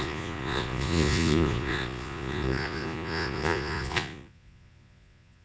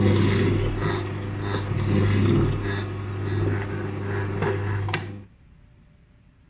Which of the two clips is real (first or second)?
second